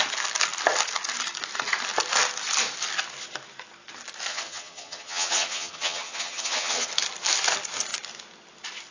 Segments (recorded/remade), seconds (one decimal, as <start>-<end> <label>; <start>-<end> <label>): 0.0-4.3 recorded; 4.3-6.9 remade; 6.9-8.9 recorded